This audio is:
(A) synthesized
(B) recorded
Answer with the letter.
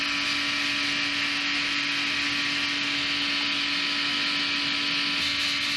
B